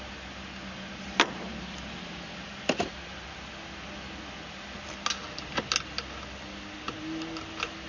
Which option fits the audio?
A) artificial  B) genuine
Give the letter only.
B